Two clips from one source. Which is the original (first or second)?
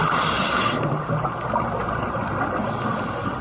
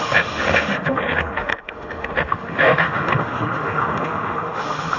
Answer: first